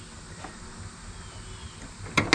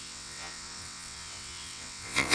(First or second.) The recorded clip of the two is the first